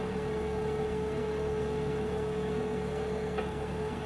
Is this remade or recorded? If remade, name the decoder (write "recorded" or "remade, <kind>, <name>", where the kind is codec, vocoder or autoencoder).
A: remade, codec, SNAC